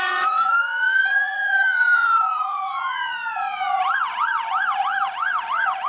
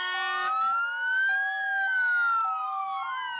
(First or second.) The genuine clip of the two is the second